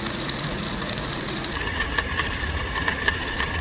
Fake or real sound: fake